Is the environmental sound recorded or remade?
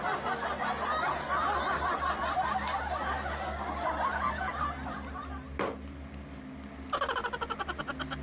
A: recorded